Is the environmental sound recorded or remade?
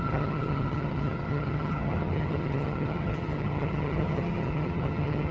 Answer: remade